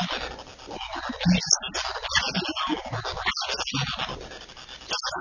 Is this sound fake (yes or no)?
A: no